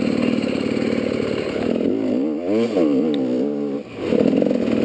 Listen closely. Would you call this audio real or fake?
real